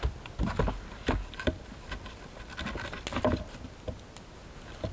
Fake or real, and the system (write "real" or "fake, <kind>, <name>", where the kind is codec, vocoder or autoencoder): real